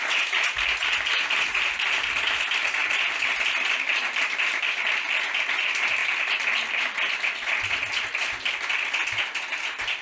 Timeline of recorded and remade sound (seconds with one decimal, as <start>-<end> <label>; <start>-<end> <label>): 0.0-10.0 recorded